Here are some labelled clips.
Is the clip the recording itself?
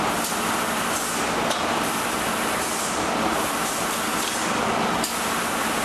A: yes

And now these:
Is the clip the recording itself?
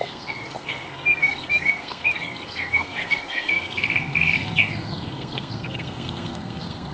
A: no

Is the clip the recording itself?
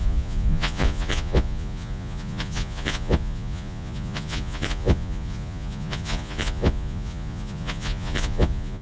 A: no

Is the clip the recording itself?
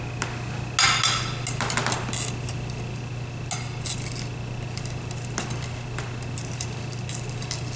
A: yes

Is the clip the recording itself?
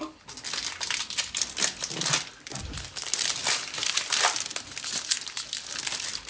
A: yes